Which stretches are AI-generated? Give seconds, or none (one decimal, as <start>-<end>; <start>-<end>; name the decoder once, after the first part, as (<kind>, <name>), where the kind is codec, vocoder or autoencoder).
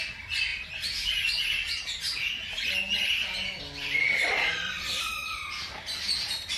0.0-0.5 (vocoder, BigVGAN v2); 3.6-5.2